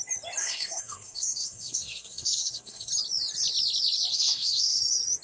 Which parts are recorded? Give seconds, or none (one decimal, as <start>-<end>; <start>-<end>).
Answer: 0.0-0.4; 2.9-4.1; 4.8-5.2